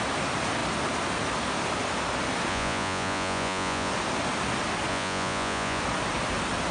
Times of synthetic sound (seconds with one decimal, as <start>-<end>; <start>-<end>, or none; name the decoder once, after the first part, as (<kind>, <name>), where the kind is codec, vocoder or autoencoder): 2.5-3.9 (vocoder, Vocos); 4.9-5.8